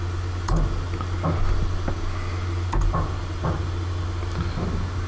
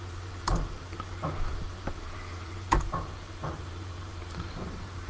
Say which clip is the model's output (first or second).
second